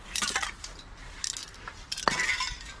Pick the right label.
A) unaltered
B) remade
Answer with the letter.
A